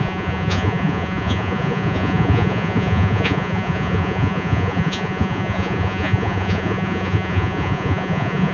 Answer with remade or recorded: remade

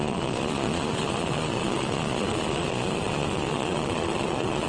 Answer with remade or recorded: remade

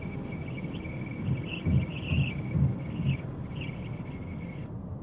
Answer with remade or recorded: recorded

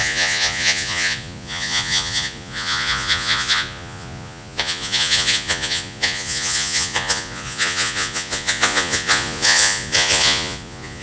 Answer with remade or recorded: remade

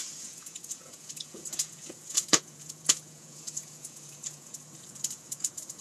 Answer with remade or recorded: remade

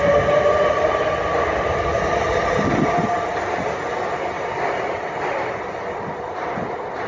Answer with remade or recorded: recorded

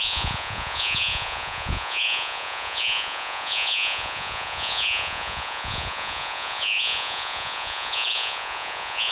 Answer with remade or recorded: remade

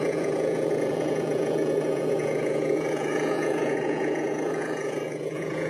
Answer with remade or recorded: remade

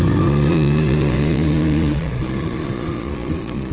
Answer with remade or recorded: remade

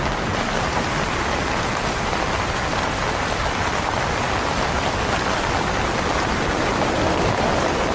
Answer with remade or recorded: recorded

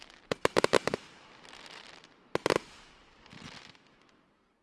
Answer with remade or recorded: recorded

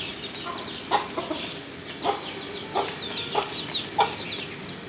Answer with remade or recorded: recorded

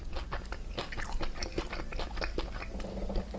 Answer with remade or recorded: recorded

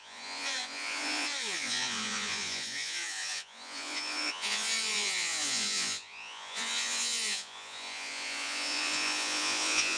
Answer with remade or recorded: remade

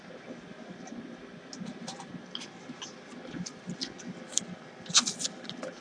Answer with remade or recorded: recorded